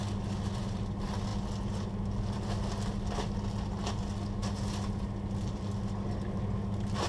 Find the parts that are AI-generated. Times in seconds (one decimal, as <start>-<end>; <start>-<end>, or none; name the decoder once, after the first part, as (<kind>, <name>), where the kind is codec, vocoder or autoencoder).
none